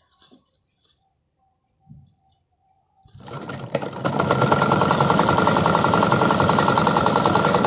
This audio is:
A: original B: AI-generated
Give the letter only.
B